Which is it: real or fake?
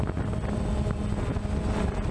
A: real